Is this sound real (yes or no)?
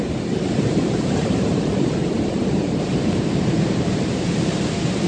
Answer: no